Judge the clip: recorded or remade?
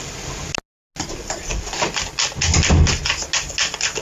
recorded